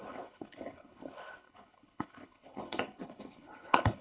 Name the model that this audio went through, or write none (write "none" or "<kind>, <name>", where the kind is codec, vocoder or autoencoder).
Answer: codec, HILCodec